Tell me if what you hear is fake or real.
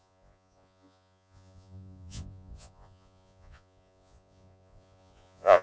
fake